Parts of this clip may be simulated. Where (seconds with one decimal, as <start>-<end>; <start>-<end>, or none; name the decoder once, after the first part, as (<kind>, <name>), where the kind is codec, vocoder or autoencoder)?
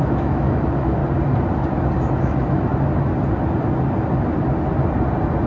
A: 0.0-1.0 (autoencoder, DAC-VAE); 2.2-2.7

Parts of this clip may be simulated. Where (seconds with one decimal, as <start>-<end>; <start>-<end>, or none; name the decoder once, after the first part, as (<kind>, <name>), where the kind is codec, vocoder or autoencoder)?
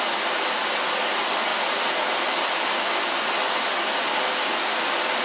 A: none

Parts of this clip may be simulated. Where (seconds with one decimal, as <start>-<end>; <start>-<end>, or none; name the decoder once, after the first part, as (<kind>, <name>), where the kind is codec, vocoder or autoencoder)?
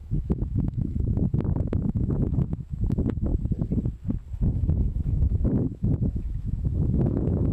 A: 0.0-3.3 (autoencoder, DAC-VAE); 4.5-7.5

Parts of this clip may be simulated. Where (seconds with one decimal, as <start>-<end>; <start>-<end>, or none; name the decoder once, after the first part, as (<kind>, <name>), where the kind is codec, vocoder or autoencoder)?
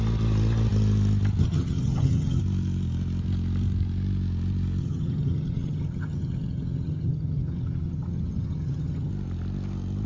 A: 1.4-2.4 (vocoder, HiFi-GAN); 4.8-9.1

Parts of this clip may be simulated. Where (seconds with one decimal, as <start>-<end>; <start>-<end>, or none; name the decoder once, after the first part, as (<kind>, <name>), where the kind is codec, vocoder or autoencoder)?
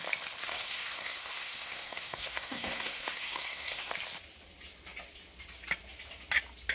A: 0.4-3.9 (codec, SNAC)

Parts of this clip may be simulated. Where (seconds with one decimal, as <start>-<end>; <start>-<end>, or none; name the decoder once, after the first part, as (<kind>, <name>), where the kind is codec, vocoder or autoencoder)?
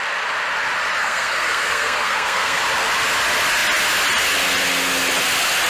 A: 1.0-2.6 (codec, SNAC)